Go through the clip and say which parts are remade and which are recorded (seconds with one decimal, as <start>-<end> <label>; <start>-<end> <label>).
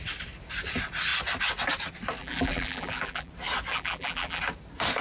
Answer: 0.0-2.2 recorded; 2.2-3.3 remade; 3.3-3.7 recorded; 3.7-4.4 remade; 4.4-5.0 recorded